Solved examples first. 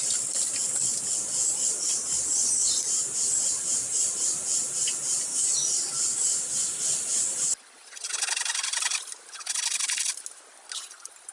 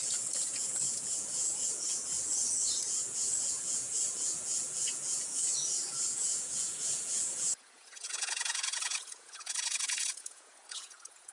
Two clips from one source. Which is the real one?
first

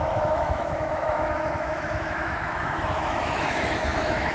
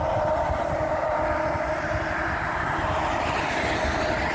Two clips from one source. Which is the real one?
second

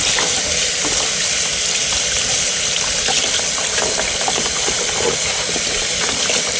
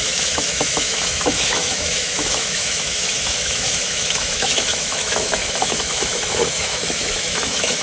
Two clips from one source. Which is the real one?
first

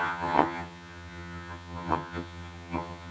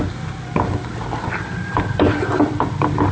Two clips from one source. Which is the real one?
second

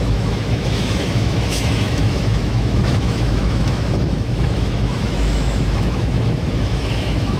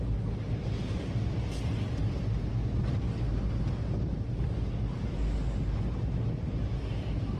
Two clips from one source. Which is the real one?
second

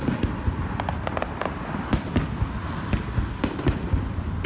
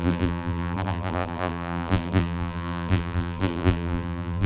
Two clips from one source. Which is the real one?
first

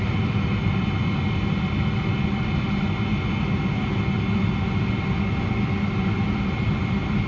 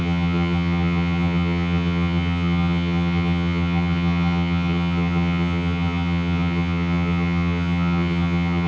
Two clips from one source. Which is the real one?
first